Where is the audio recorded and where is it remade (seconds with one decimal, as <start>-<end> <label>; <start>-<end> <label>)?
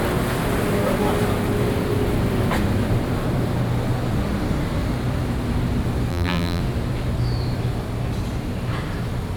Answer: 0.0-6.1 recorded; 6.1-6.6 remade; 6.6-9.4 recorded